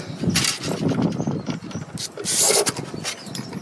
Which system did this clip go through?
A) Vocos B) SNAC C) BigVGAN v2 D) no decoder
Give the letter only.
D